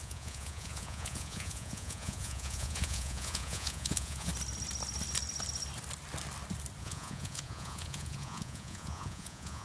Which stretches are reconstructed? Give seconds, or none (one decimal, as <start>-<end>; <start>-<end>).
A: 0.0-4.3; 6.8-9.6